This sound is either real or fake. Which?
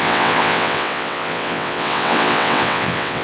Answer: fake